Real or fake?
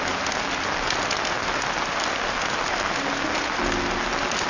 real